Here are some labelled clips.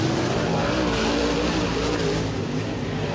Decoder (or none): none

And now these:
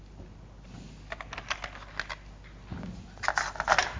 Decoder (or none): none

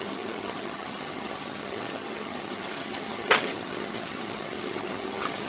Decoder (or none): vocoder, HiFi-GAN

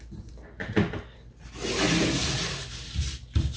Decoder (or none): none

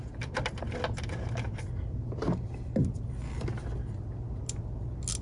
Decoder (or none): none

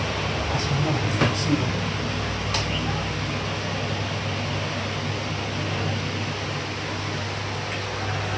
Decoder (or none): none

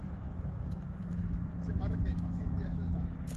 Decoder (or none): autoencoder, DAC-VAE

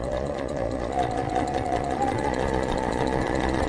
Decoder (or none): vocoder, Vocos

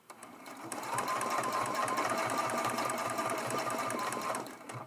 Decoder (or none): vocoder, BigVGAN v2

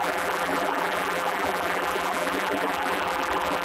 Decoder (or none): vocoder, BigVGAN v2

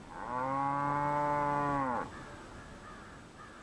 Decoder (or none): none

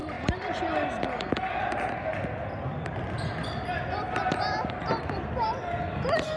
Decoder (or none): none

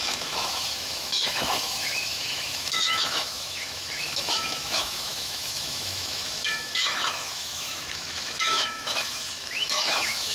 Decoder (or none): autoencoder, DAC-VAE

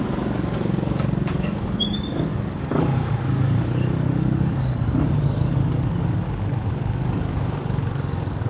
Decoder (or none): codec, DAC